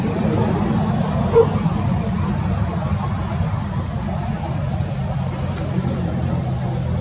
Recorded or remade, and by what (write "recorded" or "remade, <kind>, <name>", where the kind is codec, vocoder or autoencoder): recorded